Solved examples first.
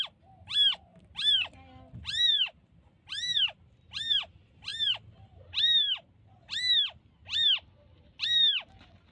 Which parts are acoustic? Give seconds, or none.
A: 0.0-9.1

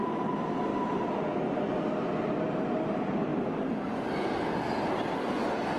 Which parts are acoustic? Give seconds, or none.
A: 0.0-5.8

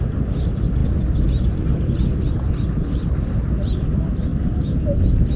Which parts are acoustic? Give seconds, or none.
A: 0.0-5.4

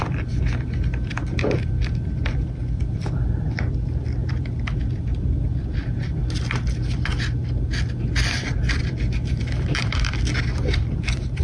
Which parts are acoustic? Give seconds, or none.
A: 6.2-8.4